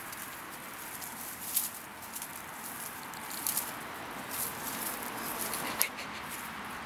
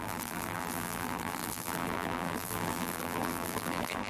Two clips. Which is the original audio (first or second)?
first